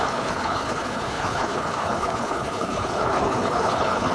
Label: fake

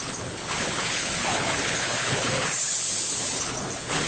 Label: fake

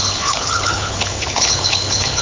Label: fake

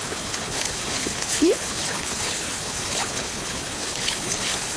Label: fake